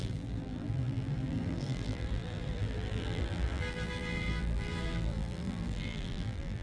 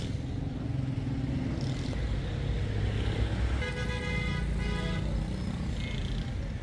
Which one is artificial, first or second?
first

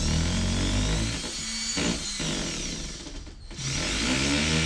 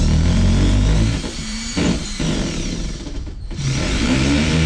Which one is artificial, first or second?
second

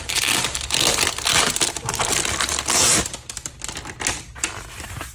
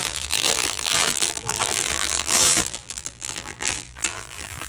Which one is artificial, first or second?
second